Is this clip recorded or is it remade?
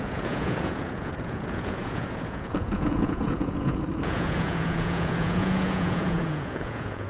remade